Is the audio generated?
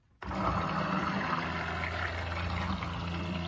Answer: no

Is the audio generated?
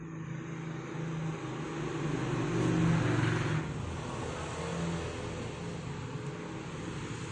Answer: no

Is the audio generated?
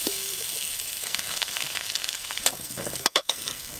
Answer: yes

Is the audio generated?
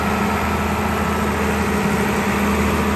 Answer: no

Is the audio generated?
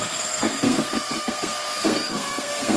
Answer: yes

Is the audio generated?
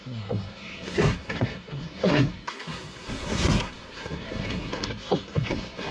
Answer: yes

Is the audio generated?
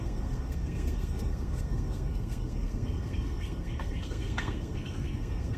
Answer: yes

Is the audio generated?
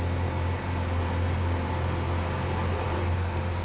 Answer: no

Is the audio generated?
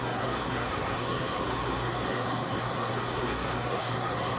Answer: yes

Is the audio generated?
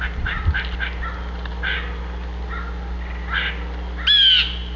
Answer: no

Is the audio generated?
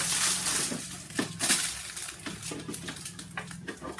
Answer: no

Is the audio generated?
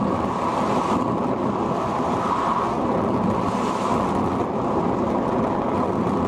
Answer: no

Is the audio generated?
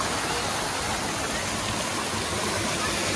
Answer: no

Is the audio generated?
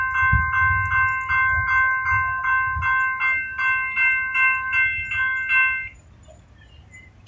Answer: no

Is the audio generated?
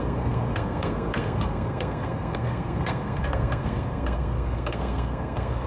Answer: yes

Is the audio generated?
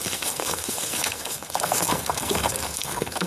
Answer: yes